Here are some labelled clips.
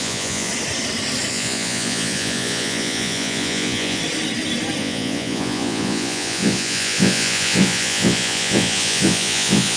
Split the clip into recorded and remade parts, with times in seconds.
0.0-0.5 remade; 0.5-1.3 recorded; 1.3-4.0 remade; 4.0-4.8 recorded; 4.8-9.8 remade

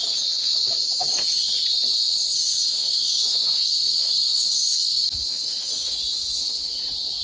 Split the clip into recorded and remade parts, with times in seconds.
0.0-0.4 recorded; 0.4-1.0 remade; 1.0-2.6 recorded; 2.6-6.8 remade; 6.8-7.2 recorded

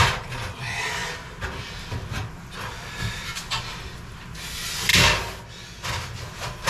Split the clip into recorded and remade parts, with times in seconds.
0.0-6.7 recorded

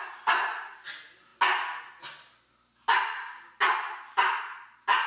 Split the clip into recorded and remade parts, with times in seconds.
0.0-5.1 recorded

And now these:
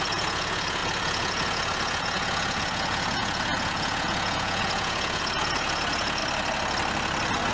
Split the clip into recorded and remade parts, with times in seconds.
0.0-6.2 remade; 6.2-7.5 recorded

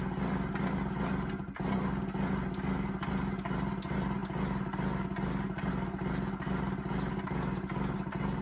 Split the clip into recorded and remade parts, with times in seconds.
0.0-8.4 recorded

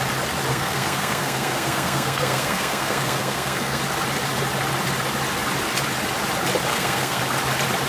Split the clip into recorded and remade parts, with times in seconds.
0.0-0.5 recorded; 0.5-3.8 remade; 3.8-6.7 recorded; 6.7-7.2 remade; 7.2-7.9 recorded